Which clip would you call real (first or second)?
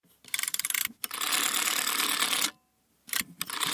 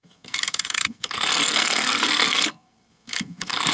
first